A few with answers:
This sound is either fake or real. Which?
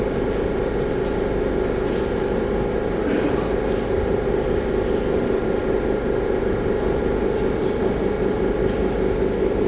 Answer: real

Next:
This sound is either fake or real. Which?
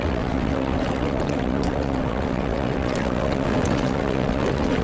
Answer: fake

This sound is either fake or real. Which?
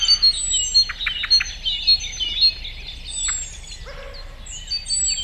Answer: real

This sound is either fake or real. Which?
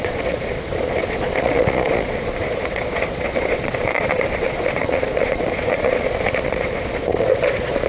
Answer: fake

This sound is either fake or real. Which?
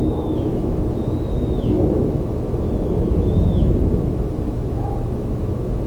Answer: fake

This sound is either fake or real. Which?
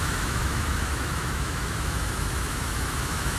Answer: fake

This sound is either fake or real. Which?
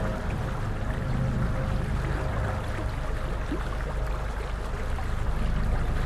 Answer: real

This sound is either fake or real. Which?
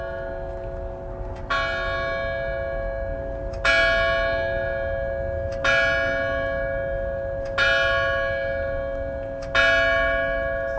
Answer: real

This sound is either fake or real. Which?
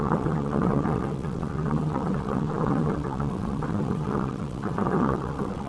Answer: fake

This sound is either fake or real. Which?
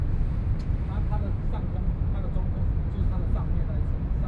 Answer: real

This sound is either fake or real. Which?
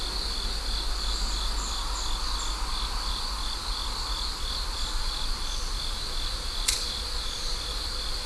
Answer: real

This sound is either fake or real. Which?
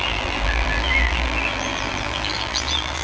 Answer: fake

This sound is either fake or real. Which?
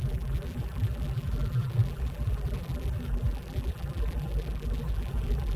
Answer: fake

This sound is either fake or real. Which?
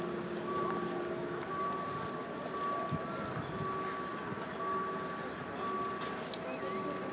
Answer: real